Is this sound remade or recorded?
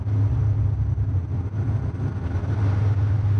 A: recorded